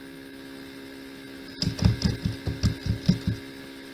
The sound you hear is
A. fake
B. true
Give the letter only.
B